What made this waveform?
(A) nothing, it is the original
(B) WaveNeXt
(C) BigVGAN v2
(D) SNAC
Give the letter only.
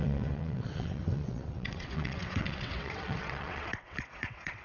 B